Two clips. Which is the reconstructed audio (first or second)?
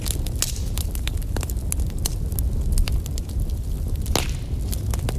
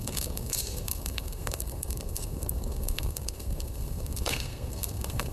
second